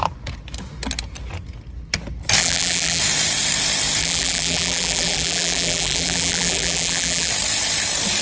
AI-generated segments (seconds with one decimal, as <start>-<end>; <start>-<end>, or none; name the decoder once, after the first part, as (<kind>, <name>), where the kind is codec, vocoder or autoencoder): 2.4-3.0 (vocoder, BigVGAN v2); 4.0-7.3